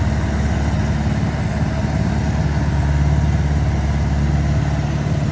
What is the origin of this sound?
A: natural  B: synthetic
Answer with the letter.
A